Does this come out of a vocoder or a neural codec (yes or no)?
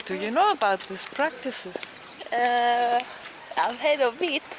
no